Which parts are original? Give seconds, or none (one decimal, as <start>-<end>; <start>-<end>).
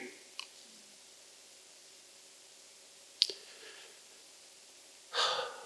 0.0-5.7